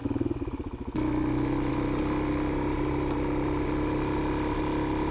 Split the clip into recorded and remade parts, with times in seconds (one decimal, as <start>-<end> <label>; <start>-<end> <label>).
0.0-5.1 recorded